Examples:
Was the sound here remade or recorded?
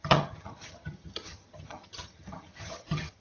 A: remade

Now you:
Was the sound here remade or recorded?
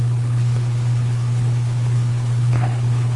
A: remade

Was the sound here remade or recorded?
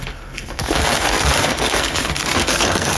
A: remade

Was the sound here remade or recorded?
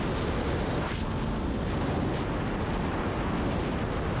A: recorded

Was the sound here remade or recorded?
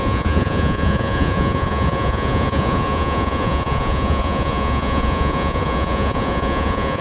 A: remade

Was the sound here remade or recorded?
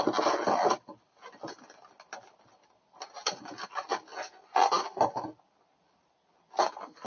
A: recorded